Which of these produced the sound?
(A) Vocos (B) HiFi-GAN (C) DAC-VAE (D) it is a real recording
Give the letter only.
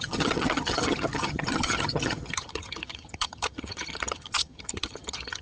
B